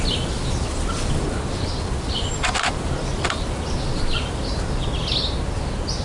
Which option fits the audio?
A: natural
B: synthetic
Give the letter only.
A